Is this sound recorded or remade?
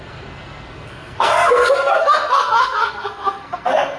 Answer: remade